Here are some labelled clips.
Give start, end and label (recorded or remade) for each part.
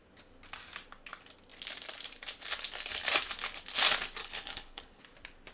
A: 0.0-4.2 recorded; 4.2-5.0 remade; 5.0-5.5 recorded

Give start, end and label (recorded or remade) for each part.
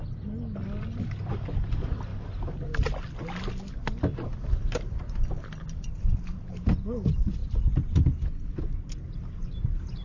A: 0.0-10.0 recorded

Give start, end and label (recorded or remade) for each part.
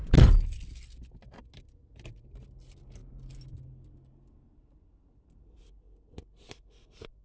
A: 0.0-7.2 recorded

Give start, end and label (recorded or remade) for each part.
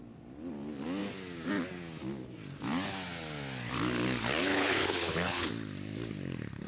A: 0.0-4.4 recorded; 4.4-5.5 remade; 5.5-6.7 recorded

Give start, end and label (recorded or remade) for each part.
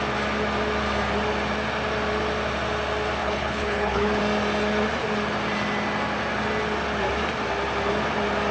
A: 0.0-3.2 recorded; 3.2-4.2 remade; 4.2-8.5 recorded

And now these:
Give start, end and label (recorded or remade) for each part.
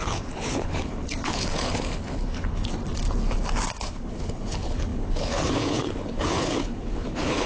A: 0.0-2.7 remade; 2.7-3.8 recorded; 3.8-7.5 remade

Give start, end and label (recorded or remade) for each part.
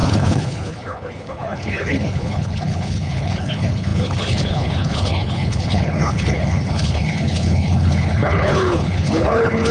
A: 0.0-9.7 remade